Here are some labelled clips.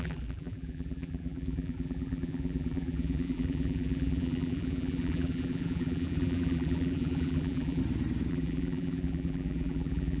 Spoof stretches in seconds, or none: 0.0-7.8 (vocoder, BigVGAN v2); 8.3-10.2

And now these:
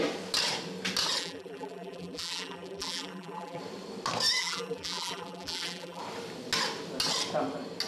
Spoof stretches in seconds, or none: 1.2-3.6 (vocoder, BigVGAN v2); 4.4-6.0

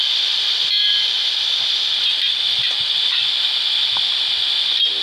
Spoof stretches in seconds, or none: 0.0-3.0 (vocoder, BigVGAN v2)

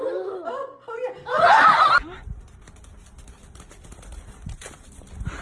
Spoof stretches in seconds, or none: 1.3-1.9 (vocoder, BigVGAN v2)

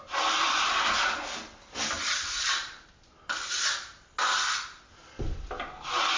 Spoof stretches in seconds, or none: 2.0-2.8 (vocoder, BigVGAN v2)

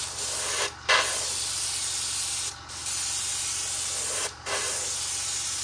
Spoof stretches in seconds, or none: none